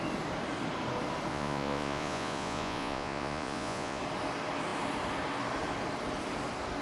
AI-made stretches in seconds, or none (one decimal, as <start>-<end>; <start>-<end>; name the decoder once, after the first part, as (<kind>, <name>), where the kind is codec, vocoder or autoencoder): 1.3-4.0 (vocoder, Vocos)